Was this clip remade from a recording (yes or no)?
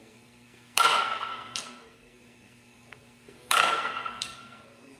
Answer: yes